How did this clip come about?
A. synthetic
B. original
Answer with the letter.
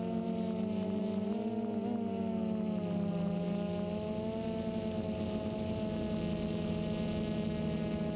B